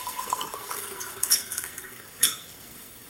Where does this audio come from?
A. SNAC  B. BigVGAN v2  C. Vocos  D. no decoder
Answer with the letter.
A